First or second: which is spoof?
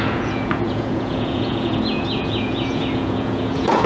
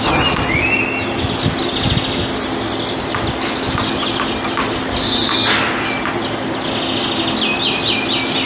first